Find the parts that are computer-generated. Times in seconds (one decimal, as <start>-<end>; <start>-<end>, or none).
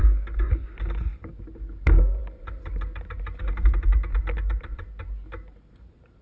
none